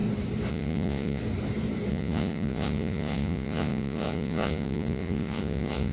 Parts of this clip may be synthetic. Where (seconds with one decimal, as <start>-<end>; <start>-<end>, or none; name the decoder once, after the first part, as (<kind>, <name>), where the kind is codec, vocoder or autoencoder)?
0.5-1.2 (vocoder, Vocos); 1.9-5.9